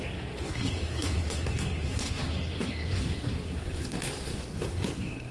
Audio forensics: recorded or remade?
remade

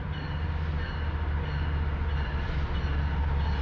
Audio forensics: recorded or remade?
recorded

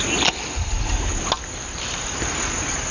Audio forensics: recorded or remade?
recorded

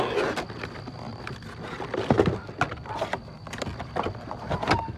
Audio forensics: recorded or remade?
recorded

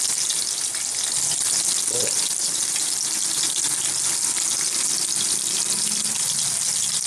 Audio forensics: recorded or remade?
recorded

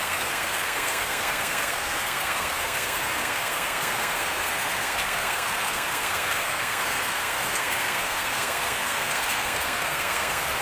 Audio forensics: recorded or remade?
remade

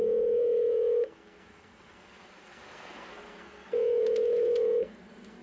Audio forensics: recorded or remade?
remade